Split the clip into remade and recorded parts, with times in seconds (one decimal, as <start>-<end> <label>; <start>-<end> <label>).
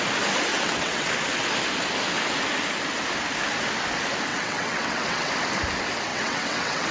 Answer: 0.0-0.5 recorded; 0.5-1.1 remade; 1.1-4.3 recorded; 4.3-5.3 remade; 5.3-6.1 recorded; 6.1-6.9 remade